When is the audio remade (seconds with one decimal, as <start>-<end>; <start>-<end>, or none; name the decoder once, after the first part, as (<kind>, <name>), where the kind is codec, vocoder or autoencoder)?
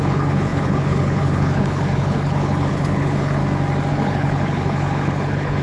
0.0-3.4 (codec, HILCodec); 3.9-5.6